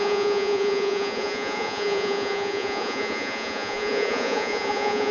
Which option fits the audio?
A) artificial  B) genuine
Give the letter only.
A